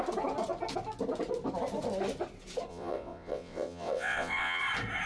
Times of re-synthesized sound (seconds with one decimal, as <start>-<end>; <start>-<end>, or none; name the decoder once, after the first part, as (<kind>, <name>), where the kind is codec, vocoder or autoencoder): 2.7-4.6 (vocoder, WaveNeXt)